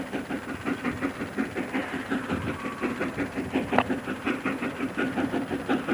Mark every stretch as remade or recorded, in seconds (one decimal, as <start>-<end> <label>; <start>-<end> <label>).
0.0-1.8 recorded; 1.8-5.3 remade; 5.3-5.9 recorded